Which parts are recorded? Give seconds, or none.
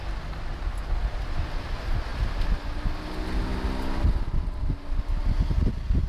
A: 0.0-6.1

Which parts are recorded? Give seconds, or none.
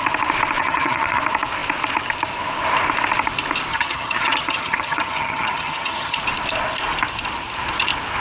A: 0.0-0.6; 1.2-3.7; 6.2-8.2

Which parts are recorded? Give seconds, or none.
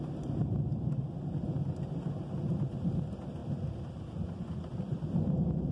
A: 0.0-5.7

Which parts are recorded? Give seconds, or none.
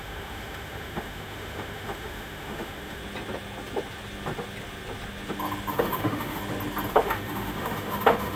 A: 3.0-5.7; 6.4-6.9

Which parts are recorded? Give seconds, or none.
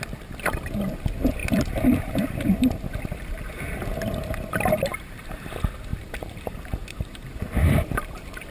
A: 0.0-1.4; 3.0-4.9; 5.5-5.9; 7.3-8.5